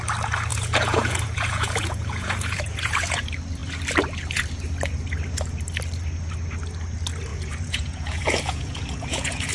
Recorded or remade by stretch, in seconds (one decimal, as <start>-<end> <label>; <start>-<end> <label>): 0.0-0.5 recorded; 0.5-3.2 remade; 3.2-7.3 recorded; 7.3-9.5 remade